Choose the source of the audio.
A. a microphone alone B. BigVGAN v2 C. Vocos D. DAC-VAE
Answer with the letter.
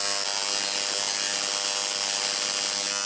A